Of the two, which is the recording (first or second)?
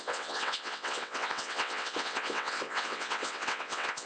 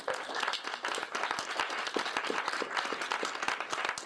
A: second